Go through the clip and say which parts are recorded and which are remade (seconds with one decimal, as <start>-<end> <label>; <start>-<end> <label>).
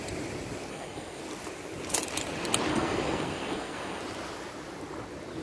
0.0-0.7 recorded; 0.7-1.2 remade; 1.2-2.7 recorded; 2.7-4.0 remade; 4.0-5.4 recorded